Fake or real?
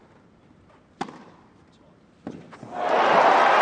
real